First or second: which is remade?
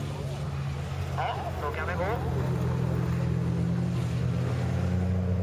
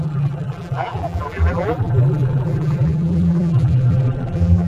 second